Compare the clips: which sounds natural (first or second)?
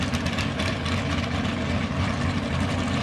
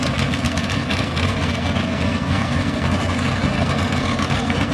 first